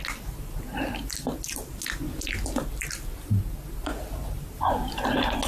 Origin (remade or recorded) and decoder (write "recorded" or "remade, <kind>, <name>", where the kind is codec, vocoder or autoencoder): recorded